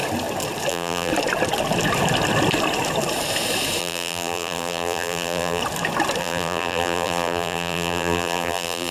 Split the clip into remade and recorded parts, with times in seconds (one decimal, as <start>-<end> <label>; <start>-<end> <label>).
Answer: 0.0-0.7 recorded; 0.7-1.1 remade; 1.1-3.8 recorded; 3.8-5.6 remade; 5.6-6.2 recorded; 6.2-8.9 remade